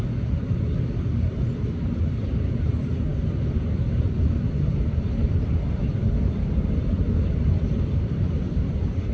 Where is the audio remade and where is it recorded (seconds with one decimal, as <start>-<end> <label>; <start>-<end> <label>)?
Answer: 0.0-9.1 recorded